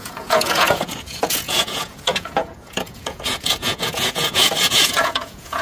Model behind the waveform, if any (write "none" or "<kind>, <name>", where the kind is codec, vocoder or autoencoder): vocoder, Vocos